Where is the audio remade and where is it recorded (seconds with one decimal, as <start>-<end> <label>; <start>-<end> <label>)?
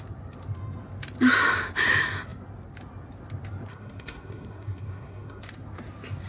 0.0-3.7 recorded; 3.7-5.4 remade; 5.4-6.3 recorded